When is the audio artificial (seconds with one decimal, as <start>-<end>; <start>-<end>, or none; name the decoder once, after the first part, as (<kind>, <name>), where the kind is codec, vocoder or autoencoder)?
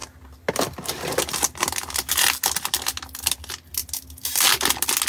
none